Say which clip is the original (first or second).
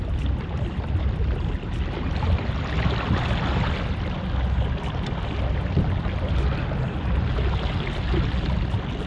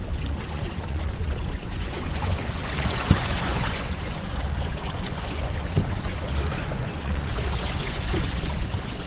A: first